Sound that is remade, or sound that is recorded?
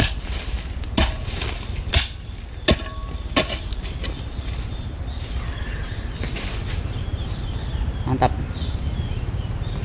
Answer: recorded